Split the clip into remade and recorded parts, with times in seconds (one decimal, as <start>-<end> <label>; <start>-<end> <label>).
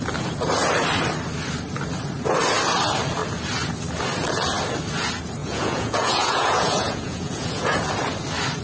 0.0-5.4 recorded; 5.4-7.9 remade; 7.9-8.6 recorded